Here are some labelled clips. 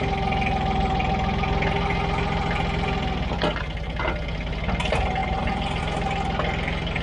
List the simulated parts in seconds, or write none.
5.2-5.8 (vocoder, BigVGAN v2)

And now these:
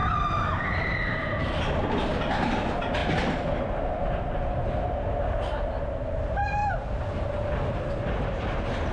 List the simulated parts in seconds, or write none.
0.0-1.5 (vocoder, BigVGAN v2)

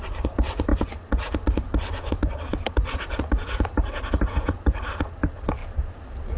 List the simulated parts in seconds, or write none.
none

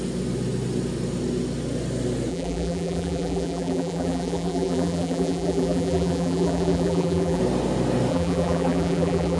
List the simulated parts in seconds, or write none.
2.3-7.4 (vocoder, BigVGAN v2); 8.1-9.4

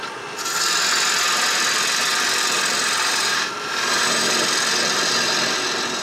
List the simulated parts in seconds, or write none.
2.1-5.1 (vocoder, BigVGAN v2)

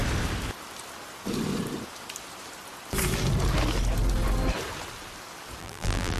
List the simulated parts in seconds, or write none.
5.6-6.2 (vocoder, BigVGAN v2)